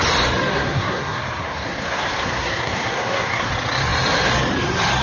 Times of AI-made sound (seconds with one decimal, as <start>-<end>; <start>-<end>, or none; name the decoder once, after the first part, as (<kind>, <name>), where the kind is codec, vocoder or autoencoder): 0.5-3.5 (codec, SNAC)